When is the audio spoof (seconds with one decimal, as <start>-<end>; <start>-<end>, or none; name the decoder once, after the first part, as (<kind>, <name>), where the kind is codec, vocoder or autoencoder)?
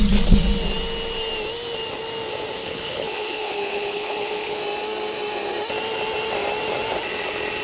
2.6-4.6 (codec, HILCodec)